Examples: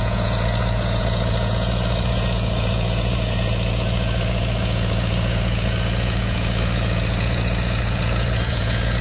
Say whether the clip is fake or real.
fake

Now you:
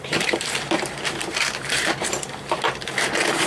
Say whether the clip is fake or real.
fake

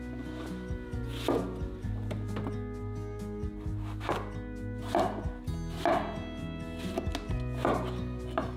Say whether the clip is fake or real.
real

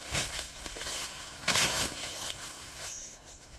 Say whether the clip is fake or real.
fake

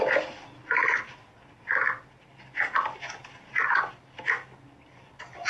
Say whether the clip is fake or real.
real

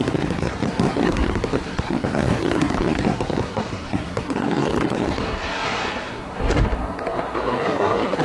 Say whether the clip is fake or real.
fake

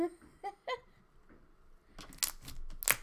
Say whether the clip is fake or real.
real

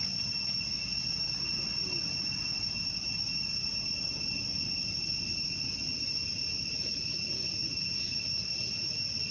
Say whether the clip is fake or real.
real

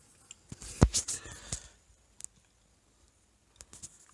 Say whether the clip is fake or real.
real